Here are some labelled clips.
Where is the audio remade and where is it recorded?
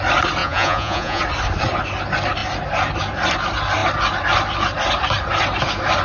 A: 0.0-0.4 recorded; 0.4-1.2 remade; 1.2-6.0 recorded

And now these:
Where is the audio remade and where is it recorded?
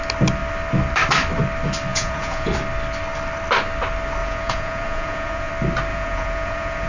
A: 0.0-1.9 recorded; 1.9-2.5 remade; 2.5-4.2 recorded; 4.2-5.5 remade; 5.5-5.9 recorded; 5.9-6.9 remade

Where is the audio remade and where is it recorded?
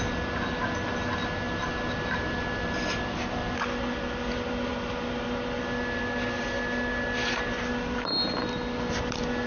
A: 0.0-9.5 recorded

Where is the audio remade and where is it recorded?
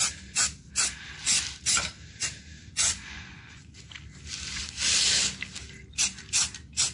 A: 0.0-2.6 recorded; 2.6-3.8 remade; 3.8-6.9 recorded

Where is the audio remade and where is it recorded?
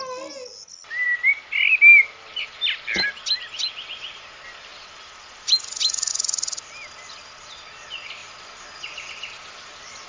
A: 0.0-10.1 recorded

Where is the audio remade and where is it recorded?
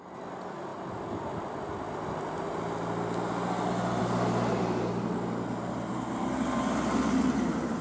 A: 0.0-7.8 recorded